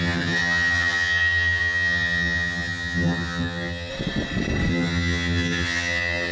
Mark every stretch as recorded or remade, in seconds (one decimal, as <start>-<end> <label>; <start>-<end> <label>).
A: 0.0-3.9 remade; 3.9-4.7 recorded; 4.7-6.3 remade